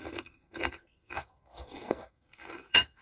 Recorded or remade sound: remade